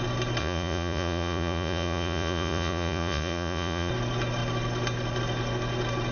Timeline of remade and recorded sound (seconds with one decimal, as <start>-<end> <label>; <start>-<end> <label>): 0.0-0.4 recorded; 0.4-3.9 remade; 3.9-6.1 recorded